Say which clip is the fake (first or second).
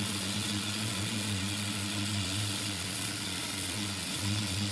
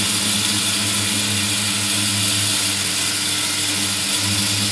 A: first